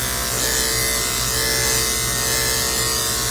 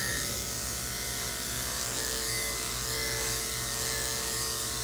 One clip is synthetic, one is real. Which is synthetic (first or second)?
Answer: second